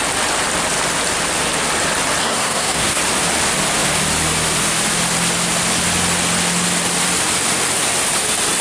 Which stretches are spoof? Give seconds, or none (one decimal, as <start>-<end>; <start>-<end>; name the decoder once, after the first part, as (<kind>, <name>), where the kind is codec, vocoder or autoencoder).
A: 2.2-3.0 (codec, SNAC)